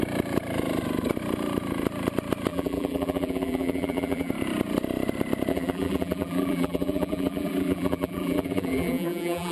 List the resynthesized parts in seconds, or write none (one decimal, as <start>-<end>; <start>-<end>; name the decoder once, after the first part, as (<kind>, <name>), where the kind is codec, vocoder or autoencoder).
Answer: 2.5-4.3 (vocoder, BigVGAN v2); 5.5-9.5

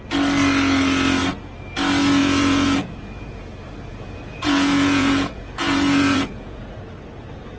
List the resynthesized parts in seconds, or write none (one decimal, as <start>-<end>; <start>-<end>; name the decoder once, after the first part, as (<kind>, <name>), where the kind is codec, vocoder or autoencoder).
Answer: 2.2-6.8 (vocoder, Vocos)

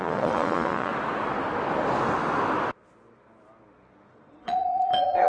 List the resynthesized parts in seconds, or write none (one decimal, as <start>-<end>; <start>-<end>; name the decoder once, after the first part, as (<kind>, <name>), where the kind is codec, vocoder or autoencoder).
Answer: 0.0-0.9 (vocoder, Vocos); 4.1-5.3

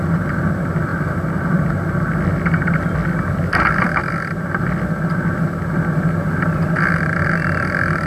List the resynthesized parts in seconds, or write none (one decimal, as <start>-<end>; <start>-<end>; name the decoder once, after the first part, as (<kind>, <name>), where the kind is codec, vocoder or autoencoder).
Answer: none

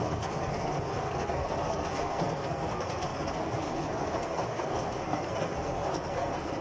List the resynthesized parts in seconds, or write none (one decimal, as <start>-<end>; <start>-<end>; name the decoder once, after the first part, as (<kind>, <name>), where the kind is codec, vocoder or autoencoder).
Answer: 0.0-6.6 (codec, SNAC)

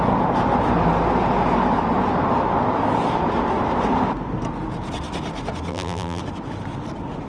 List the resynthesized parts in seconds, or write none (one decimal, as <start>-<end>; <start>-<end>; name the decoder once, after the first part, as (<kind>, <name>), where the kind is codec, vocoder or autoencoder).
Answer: 5.7-6.2 (vocoder, BigVGAN v2)